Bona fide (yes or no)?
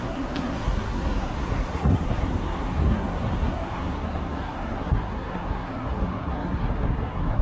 no